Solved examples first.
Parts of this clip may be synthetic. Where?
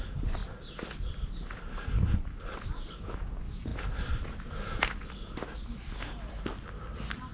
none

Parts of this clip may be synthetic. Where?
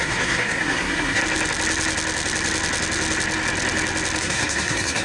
0.0-1.2 (codec, SNAC); 4.2-5.0